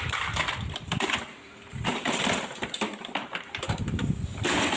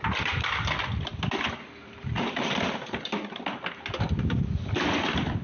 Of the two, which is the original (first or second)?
second